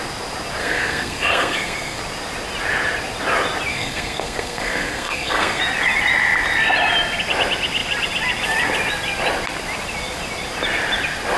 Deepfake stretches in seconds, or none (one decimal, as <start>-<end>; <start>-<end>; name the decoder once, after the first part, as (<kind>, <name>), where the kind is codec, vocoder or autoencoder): 0.6-2.0 (codec, SNAC); 3.7-5.6